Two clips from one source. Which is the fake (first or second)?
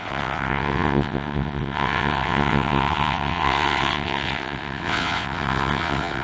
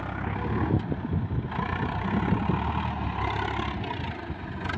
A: first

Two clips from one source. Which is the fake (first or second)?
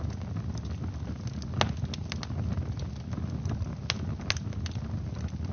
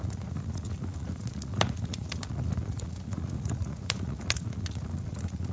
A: second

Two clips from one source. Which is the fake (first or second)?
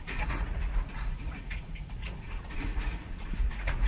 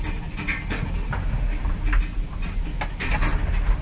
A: first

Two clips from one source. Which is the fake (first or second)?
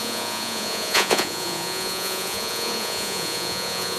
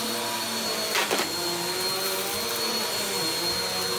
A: first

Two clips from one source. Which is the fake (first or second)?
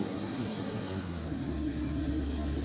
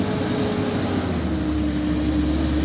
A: first